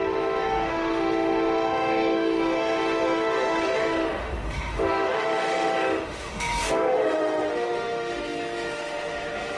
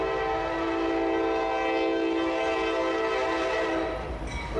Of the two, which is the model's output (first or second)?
first